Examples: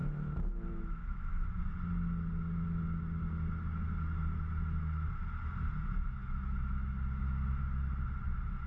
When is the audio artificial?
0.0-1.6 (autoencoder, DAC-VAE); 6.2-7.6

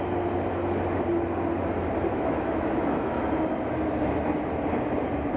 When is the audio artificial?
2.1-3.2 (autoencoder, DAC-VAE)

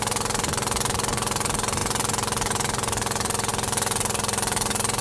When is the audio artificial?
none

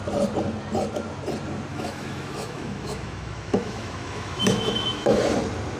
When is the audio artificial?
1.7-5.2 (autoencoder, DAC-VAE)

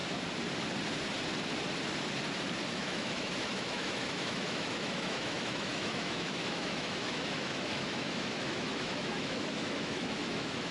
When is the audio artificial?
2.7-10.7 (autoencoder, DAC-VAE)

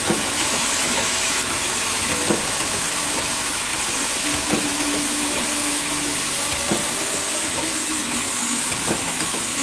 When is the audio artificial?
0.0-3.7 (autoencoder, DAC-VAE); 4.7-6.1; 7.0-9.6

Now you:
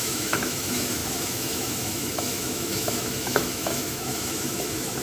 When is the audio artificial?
0.0-5.0 (autoencoder, DAC-VAE)